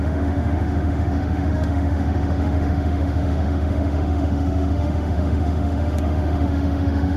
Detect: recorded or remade remade